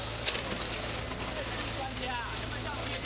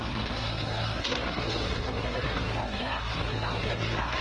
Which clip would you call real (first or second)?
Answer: first